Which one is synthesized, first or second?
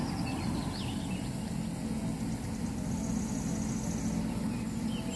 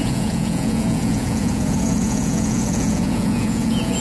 second